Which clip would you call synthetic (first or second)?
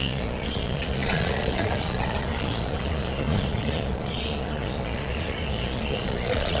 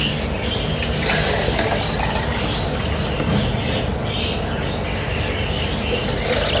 first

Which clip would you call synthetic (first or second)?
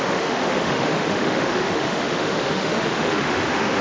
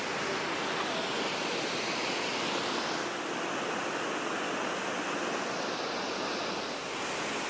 first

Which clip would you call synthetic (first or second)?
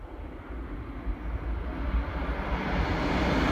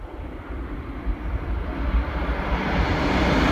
second